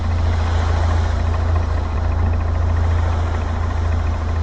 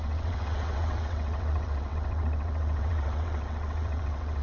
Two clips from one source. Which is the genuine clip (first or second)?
first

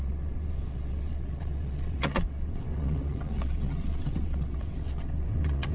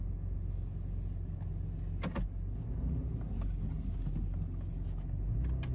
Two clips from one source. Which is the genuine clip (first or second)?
second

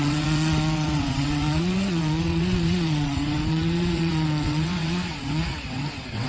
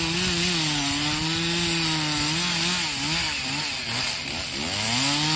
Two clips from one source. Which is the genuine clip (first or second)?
second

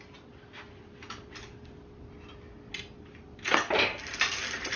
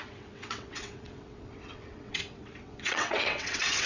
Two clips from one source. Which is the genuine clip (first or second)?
first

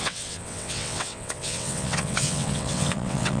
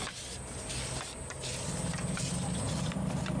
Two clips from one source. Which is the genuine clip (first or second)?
second